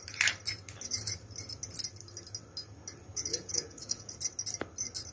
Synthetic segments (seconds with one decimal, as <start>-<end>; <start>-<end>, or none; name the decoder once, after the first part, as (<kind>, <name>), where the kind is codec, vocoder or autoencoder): 3.1-4.1 (vocoder, Vocos)